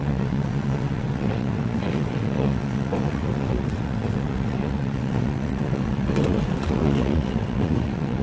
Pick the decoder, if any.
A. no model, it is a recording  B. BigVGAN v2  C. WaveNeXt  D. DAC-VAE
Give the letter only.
C